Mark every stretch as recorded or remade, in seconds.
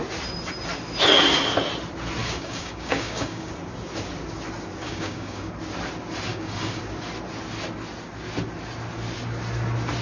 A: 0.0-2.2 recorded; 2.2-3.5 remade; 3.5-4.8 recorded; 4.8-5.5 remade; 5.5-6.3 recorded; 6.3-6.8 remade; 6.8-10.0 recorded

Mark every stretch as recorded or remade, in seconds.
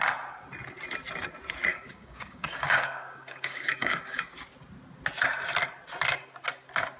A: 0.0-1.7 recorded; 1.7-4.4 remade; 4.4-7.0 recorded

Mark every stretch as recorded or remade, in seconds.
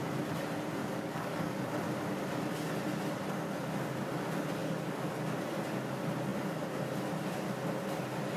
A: 0.0-0.8 recorded; 0.8-1.7 remade; 1.7-4.6 recorded; 4.6-5.1 remade; 5.1-8.4 recorded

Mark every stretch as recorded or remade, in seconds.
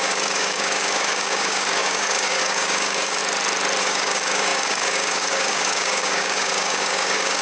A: 0.0-3.2 remade; 3.2-3.8 recorded; 3.8-7.4 remade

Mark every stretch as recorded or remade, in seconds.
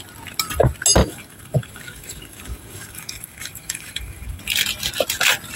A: 0.0-1.0 recorded; 1.0-4.4 remade; 4.4-5.6 recorded